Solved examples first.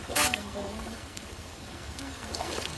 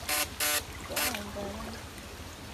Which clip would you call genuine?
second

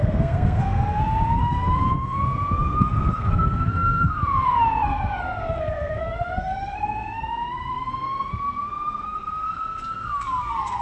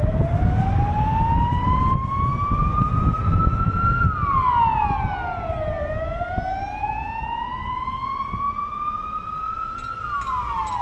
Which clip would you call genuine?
second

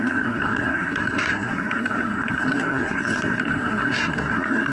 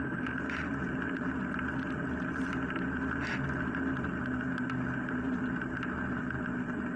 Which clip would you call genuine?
second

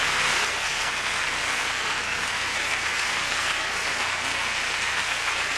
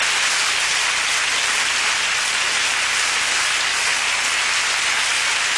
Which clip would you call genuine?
second